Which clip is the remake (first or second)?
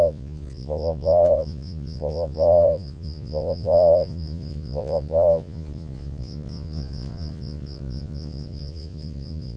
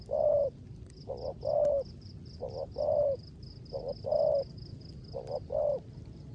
first